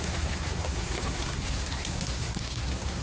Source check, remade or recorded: remade